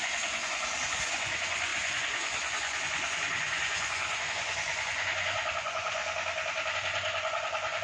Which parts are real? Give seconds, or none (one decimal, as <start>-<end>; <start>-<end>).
6.0-6.7